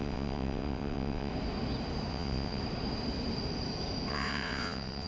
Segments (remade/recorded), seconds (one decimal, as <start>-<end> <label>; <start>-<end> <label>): 0.0-1.3 remade; 1.3-2.1 recorded; 2.1-2.6 remade; 2.6-4.1 recorded; 4.1-5.1 remade